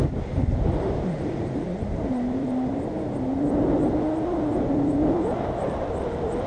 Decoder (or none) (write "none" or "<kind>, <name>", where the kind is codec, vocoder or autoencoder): none